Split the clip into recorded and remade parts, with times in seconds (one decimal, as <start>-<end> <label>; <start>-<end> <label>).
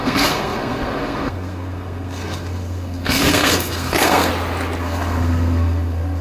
0.0-4.3 remade; 4.3-4.8 recorded; 4.8-6.2 remade